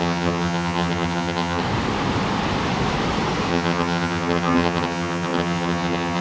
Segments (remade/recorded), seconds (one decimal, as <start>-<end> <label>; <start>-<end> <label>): 0.0-1.6 remade; 1.6-3.5 recorded; 3.5-6.2 remade